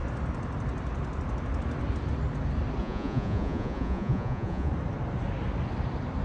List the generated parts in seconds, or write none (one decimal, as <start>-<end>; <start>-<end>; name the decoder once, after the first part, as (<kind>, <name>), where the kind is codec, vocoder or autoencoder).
2.8-4.7 (vocoder, Vocos)